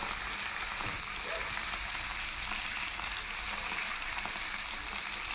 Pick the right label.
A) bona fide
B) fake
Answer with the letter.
A